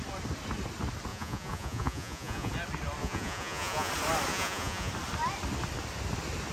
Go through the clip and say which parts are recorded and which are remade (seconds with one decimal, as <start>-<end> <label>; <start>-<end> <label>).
0.0-1.1 recorded; 1.1-2.5 remade; 2.5-3.0 recorded; 3.0-3.9 remade; 3.9-4.3 recorded; 4.3-4.9 remade; 4.9-6.5 recorded